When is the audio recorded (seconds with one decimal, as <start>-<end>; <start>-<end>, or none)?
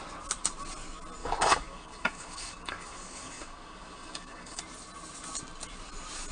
0.0-1.2; 4.6-6.3